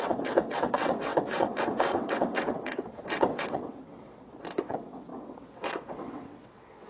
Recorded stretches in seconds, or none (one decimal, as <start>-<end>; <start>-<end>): none